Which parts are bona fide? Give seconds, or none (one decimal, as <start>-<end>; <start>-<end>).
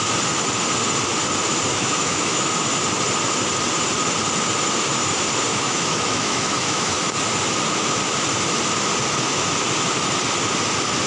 0.0-1.7; 2.5-5.5; 7.0-11.1